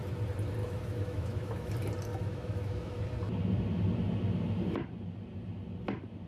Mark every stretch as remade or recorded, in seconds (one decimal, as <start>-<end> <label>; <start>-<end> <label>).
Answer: 0.0-0.6 recorded; 0.6-1.7 remade; 1.7-2.1 recorded; 2.1-3.0 remade; 3.0-6.3 recorded